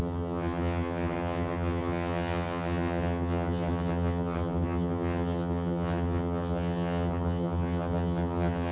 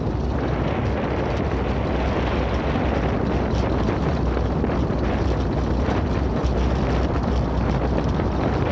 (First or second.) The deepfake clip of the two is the first